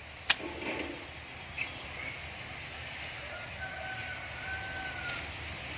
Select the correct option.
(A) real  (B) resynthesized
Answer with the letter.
A